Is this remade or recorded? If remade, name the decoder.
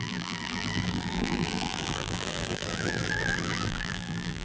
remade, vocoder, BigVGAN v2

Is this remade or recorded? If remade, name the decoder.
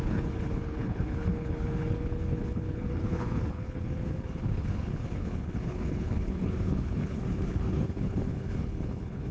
remade, codec, HILCodec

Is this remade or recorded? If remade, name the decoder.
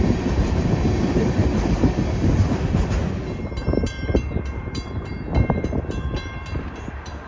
remade, vocoder, BigVGAN v2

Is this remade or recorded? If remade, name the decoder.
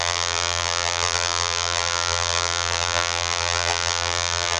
remade, vocoder, BigVGAN v2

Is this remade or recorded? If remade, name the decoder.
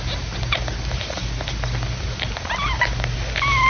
recorded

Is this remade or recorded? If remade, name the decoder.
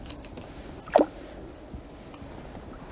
recorded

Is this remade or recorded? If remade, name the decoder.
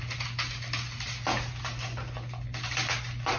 recorded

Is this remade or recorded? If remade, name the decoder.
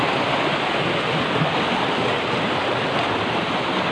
recorded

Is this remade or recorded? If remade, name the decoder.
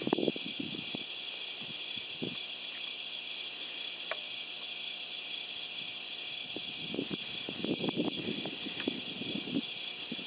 recorded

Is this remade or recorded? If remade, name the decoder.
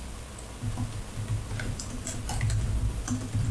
recorded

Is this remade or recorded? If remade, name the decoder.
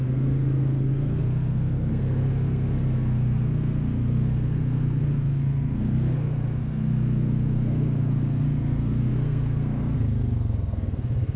remade, codec, SNAC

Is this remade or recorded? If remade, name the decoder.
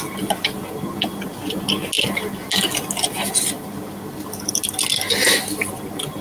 recorded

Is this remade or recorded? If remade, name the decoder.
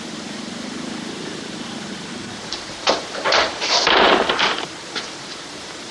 remade, vocoder, BigVGAN v2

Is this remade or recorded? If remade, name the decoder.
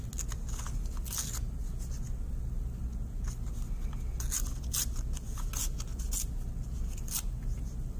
recorded